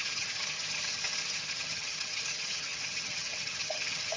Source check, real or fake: fake